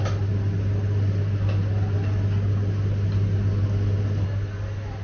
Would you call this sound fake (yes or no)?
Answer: no